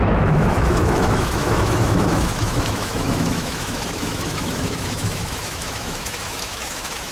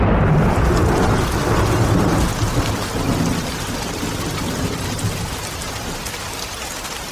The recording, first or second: second